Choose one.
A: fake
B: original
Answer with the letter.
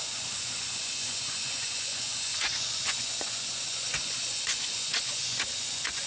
A